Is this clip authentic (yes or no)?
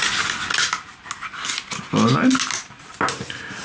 yes